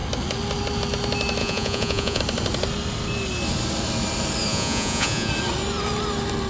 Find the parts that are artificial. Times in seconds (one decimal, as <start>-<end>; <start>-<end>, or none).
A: 1.4-2.2; 4.5-5.3

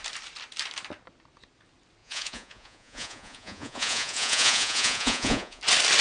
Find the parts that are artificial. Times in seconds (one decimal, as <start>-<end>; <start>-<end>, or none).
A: 2.0-5.6

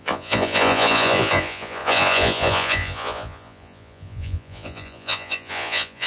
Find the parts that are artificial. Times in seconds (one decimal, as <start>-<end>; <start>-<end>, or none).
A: 0.0-6.1

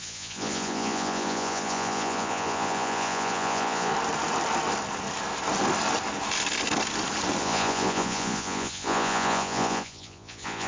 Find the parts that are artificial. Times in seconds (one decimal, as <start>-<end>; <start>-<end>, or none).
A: 0.0-3.9; 7.4-10.7

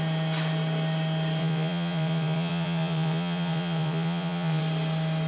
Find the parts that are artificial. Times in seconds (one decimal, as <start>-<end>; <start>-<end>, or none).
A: 1.4-4.6

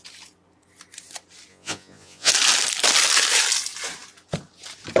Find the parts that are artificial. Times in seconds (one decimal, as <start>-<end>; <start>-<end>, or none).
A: 1.5-2.3

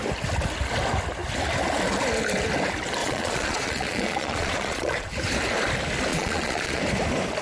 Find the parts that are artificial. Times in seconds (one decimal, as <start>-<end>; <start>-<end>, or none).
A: 3.0-5.1; 6.1-6.8